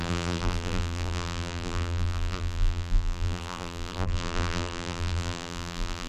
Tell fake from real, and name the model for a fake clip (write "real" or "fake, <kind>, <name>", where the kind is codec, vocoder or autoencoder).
fake, vocoder, BigVGAN v2